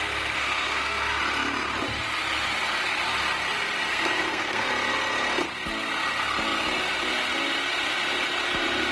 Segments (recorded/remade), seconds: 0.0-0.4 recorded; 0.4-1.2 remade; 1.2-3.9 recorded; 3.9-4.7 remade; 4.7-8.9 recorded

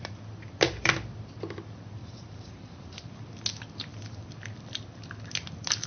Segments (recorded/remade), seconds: 0.0-2.0 recorded; 2.0-3.1 remade; 3.1-5.9 recorded

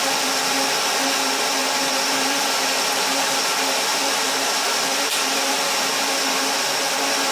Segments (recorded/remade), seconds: 0.0-7.3 remade

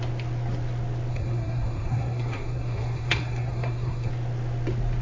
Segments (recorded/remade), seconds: 0.0-1.1 recorded; 1.1-4.1 remade; 4.1-5.0 recorded